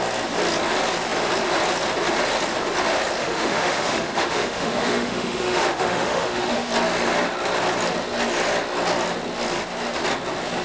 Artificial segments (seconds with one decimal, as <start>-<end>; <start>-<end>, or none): 3.2-6.7